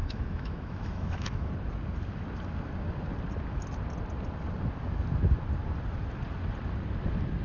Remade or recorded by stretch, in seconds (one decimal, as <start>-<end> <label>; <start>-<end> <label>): 0.0-1.5 remade; 1.5-7.4 recorded